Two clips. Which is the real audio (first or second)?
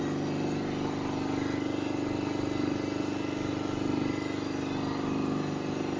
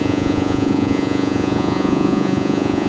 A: first